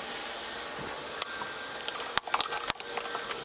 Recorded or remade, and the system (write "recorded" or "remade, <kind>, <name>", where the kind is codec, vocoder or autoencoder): recorded